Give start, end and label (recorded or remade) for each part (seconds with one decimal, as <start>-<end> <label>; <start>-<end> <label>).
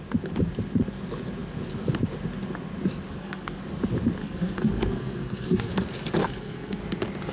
0.0-3.1 recorded; 3.1-3.6 remade; 3.6-4.2 recorded; 4.2-5.7 remade; 5.7-6.2 recorded; 6.2-6.8 remade; 6.8-7.3 recorded